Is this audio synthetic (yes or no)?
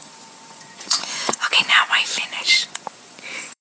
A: yes